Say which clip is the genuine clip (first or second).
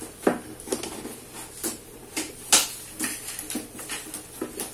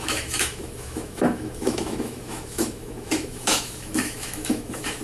first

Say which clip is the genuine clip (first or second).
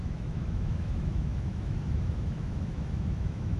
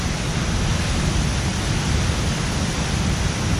second